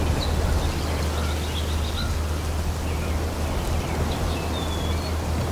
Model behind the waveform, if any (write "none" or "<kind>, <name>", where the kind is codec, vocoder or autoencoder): none